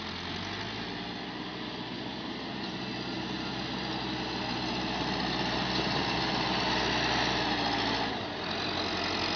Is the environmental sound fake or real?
real